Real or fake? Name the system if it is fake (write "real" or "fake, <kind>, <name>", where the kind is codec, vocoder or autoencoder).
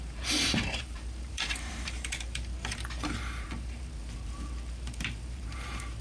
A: fake, vocoder, BigVGAN v2